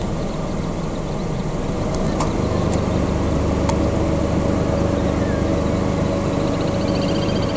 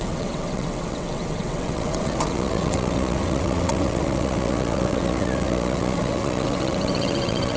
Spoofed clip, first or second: second